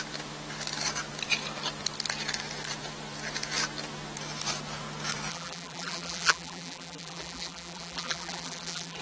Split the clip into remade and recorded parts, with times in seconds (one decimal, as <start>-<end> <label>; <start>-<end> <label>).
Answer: 0.0-5.3 recorded; 5.3-9.0 remade